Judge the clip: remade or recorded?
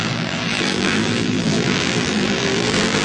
remade